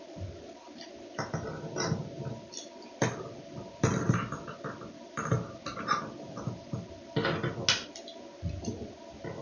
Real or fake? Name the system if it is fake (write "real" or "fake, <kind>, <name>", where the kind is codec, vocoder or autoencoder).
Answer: real